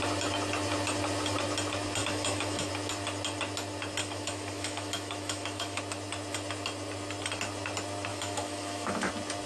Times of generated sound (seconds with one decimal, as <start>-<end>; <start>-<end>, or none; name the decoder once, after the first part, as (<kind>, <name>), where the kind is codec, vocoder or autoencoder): 2.0-2.7 (autoencoder, DAC-VAE); 4.0-5.8; 8.1-9.1